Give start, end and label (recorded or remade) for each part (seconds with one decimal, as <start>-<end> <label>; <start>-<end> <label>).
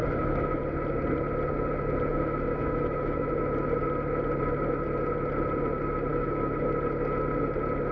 0.0-0.6 remade; 0.6-2.1 recorded; 2.1-3.3 remade; 3.3-6.1 recorded; 6.1-6.7 remade; 6.7-7.9 recorded